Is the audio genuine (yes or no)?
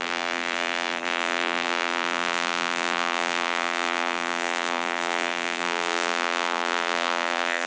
no